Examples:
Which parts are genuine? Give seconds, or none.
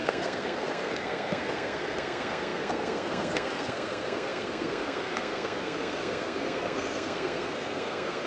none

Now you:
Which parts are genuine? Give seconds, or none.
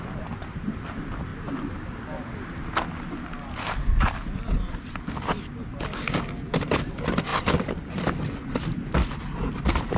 0.0-10.0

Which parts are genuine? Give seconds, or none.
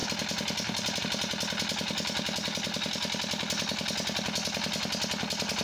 0.0-5.6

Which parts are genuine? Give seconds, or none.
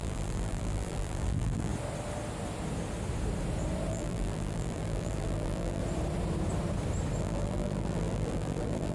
1.7-3.9; 5.8-7.2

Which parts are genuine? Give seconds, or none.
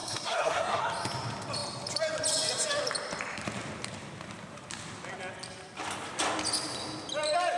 0.8-7.6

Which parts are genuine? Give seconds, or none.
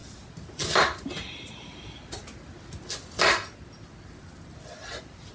0.0-5.3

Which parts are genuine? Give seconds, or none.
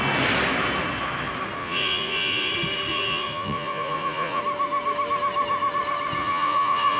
0.0-1.6; 2.5-2.9; 4.4-6.2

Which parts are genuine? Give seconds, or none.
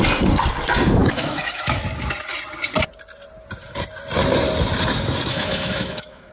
0.0-1.0; 1.8-5.3